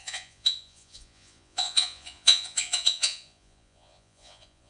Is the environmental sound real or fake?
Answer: fake